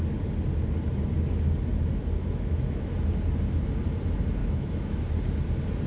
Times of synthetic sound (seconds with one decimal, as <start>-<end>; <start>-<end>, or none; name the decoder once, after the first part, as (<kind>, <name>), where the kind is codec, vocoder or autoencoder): 2.2-2.9 (autoencoder, DAC-VAE); 4.4-5.0